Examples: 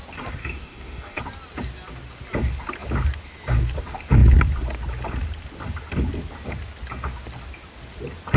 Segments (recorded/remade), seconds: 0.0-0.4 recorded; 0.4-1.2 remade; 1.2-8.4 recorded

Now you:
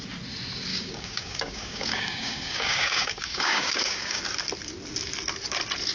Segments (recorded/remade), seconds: 0.0-0.7 recorded; 0.7-4.2 remade; 4.2-5.9 recorded

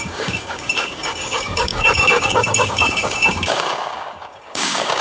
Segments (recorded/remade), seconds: 0.0-5.0 remade

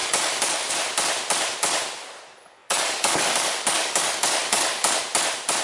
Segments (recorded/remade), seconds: 0.0-0.7 remade; 0.7-2.6 recorded; 2.6-5.0 remade; 5.0-5.6 recorded

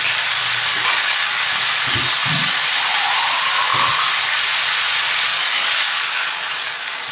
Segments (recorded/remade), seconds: 0.0-0.7 recorded; 0.7-1.4 remade; 1.4-5.3 recorded; 5.3-7.1 remade